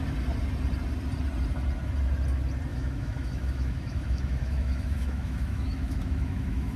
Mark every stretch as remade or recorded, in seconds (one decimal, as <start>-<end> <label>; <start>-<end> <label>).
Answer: 0.0-2.7 recorded; 2.7-6.8 remade